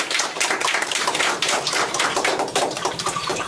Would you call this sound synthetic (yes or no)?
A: yes